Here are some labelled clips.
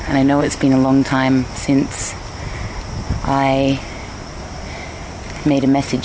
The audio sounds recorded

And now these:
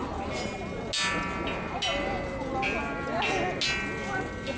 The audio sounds recorded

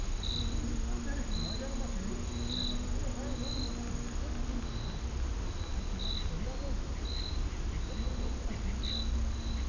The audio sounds recorded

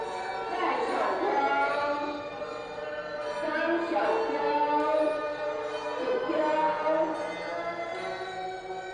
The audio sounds recorded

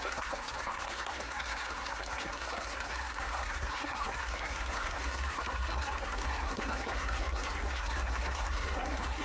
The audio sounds remade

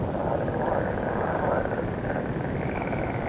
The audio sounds recorded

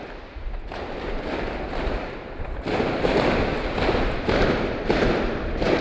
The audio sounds recorded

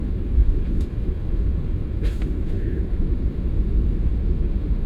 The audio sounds remade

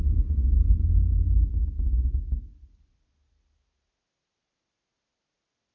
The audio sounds recorded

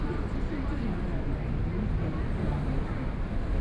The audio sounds recorded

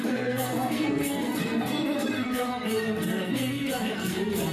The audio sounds remade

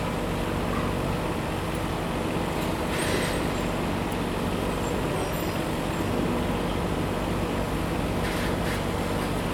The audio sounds recorded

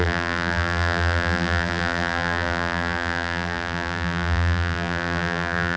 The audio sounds remade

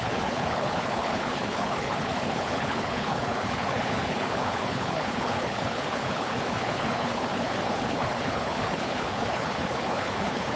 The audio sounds remade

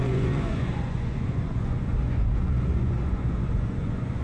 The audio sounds remade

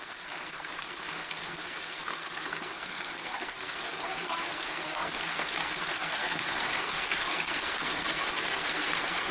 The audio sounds remade